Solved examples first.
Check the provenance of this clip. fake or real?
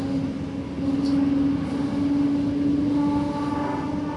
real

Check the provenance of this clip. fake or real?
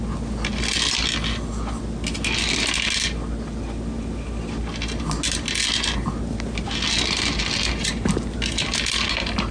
real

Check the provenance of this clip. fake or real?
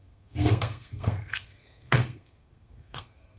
fake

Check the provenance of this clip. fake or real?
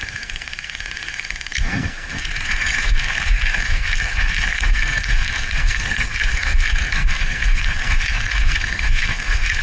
fake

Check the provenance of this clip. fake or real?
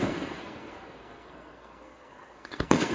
fake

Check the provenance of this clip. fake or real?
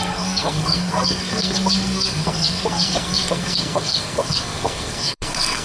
fake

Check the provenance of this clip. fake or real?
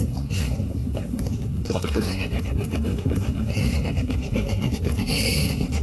fake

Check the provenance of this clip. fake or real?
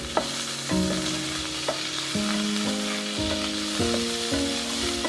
real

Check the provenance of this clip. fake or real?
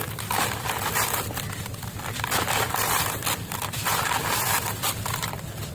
real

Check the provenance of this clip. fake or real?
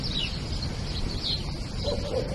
real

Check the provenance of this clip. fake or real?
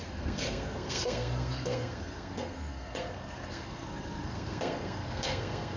fake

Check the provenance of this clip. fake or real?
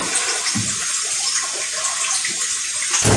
real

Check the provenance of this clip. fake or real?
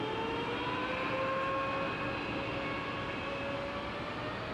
real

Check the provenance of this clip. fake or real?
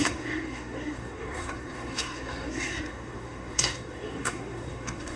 fake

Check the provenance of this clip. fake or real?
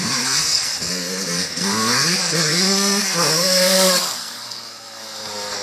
fake